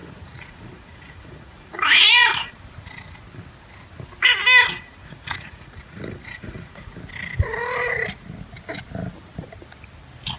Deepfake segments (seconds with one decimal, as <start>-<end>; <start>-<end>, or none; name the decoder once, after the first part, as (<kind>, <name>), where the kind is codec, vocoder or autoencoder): 0.0-2.5 (vocoder, Vocos); 5.0-6.9